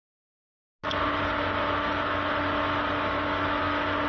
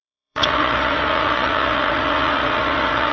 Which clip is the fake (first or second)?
second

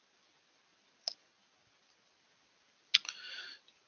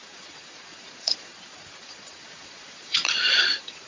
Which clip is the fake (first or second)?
second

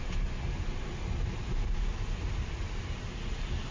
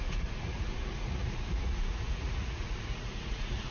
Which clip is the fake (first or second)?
second